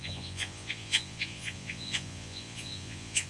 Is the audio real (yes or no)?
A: no